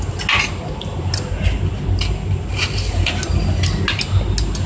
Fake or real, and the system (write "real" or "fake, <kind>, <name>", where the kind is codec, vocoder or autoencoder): real